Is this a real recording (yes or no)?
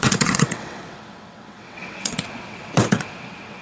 no